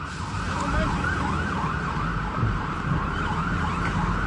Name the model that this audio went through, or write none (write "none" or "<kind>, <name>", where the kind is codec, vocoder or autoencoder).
vocoder, BigVGAN v2